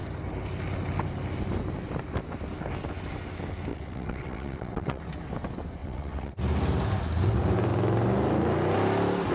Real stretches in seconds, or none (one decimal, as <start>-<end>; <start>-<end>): 0.0-3.7; 5.0-5.8; 6.4-9.3